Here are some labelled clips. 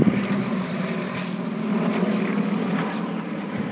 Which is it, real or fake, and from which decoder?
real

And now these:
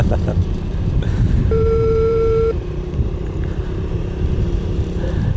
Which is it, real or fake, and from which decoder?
fake, vocoder, BigVGAN v2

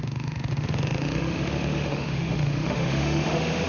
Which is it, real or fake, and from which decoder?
fake, autoencoder, DAC-VAE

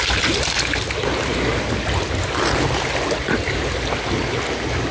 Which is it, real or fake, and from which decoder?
real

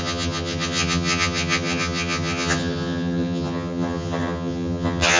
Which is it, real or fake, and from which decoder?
fake, vocoder, HiFi-GAN